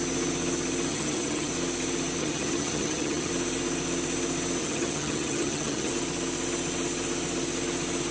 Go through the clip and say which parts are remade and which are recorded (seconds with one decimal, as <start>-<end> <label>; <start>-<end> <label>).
0.0-0.9 recorded; 0.9-1.5 remade; 1.5-2.2 recorded; 2.2-3.3 remade; 3.3-4.6 recorded; 4.6-5.9 remade; 5.9-8.1 recorded